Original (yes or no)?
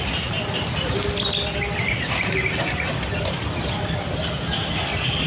yes